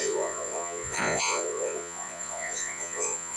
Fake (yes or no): yes